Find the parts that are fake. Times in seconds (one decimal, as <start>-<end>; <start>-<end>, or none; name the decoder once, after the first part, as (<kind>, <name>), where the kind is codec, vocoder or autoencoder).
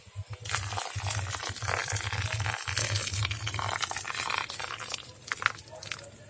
none